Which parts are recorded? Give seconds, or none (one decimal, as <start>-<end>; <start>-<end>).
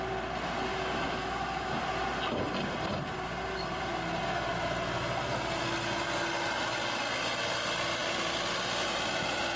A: 0.0-0.7; 1.8-9.6